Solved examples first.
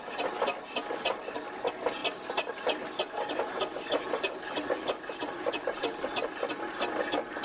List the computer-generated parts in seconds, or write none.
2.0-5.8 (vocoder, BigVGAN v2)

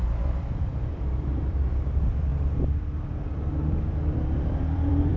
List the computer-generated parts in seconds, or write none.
0.0-5.2 (vocoder, BigVGAN v2)

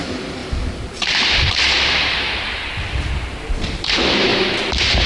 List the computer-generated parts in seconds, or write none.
0.4-3.5 (vocoder, BigVGAN v2)

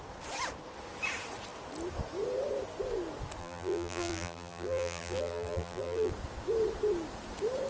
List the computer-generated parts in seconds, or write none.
3.4-6.1 (vocoder, BigVGAN v2)

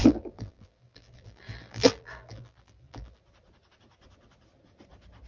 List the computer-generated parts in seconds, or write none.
0.0-3.2 (vocoder, BigVGAN v2)